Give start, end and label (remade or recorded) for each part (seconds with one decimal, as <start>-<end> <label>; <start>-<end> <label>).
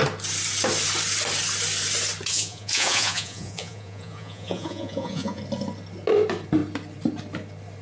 0.0-2.3 recorded; 2.3-5.4 remade; 5.4-7.8 recorded